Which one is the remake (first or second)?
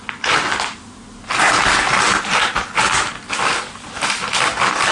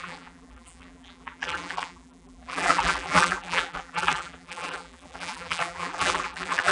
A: second